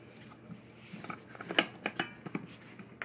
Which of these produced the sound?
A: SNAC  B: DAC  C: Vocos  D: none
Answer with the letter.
D